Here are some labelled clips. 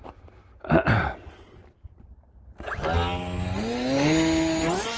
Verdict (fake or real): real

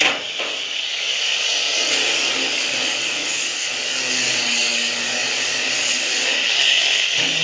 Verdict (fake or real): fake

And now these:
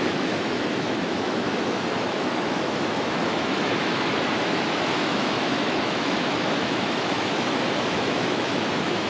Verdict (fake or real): fake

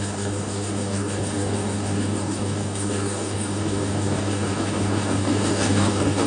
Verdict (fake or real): fake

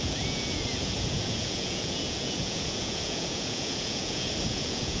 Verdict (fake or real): fake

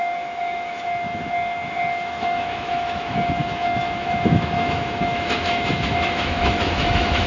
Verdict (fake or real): fake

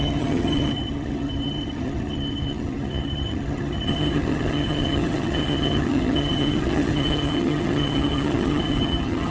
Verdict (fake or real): fake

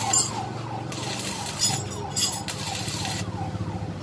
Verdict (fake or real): real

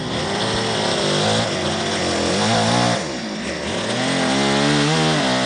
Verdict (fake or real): real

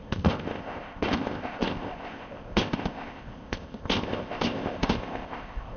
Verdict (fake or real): fake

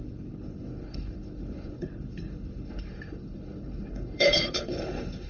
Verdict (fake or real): fake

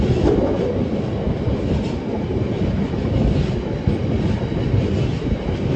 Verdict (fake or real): real